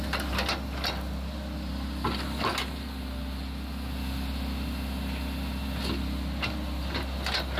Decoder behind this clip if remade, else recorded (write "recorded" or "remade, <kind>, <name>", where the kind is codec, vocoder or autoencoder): recorded